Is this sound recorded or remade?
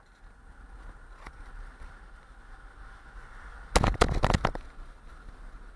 recorded